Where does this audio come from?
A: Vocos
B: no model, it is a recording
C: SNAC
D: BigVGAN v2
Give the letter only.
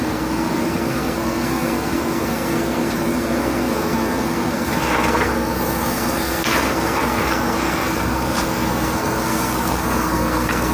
C